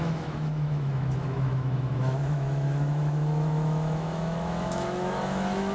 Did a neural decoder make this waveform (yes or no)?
yes